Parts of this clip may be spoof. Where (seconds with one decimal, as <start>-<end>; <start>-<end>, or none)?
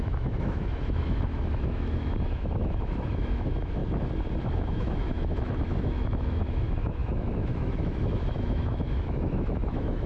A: 0.0-3.8; 4.4-10.1